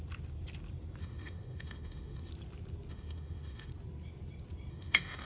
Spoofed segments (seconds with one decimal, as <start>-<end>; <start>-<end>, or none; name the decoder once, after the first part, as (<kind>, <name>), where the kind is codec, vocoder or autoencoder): 1.0-2.3 (autoencoder, DAC-VAE); 2.9-3.7; 4.7-5.3